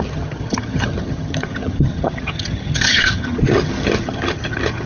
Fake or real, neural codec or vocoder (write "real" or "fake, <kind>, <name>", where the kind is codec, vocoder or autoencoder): fake, vocoder, HiFi-GAN